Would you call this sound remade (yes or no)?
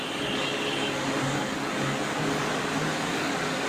yes